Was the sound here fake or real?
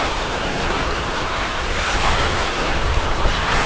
fake